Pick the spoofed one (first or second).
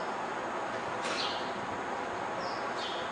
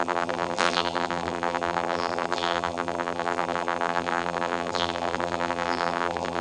second